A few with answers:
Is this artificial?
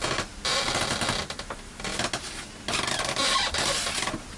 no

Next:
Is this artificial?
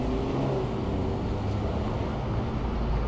no